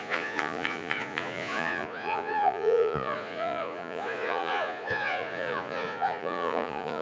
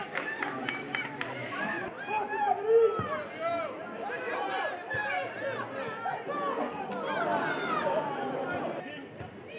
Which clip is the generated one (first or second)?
first